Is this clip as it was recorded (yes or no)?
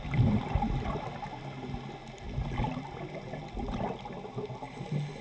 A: yes